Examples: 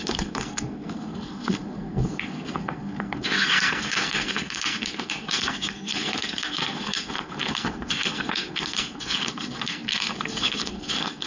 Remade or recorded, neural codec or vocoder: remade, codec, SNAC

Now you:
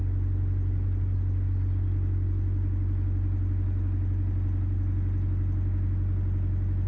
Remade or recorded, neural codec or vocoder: recorded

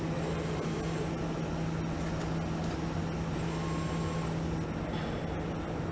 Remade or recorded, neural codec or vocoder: recorded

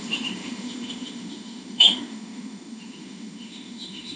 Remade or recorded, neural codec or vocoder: remade, autoencoder, DAC-VAE